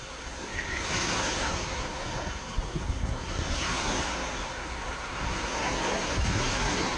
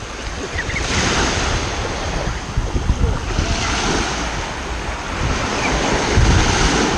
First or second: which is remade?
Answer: first